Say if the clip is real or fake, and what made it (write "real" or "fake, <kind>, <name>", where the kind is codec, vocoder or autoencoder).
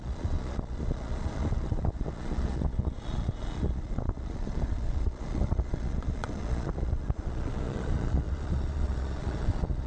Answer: fake, vocoder, Vocos